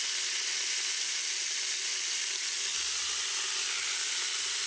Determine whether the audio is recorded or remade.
recorded